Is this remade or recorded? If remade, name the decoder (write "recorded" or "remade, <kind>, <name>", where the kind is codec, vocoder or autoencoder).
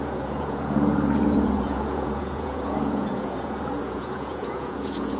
remade, vocoder, Vocos